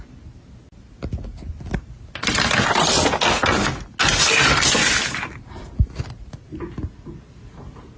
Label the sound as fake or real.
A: real